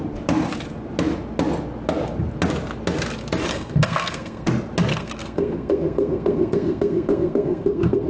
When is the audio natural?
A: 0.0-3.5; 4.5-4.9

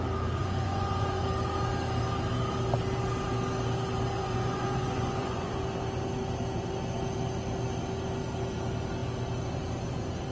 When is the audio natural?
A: 0.0-0.4; 1.2-4.2; 5.5-10.3